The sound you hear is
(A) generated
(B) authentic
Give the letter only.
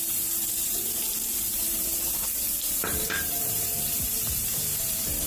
A